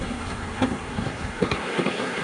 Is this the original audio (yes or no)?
no